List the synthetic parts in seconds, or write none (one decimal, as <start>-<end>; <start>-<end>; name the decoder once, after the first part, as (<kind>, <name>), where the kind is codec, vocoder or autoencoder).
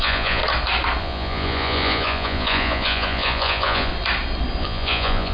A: 0.0-0.4 (vocoder, Vocos); 1.0-3.9; 4.6-5.3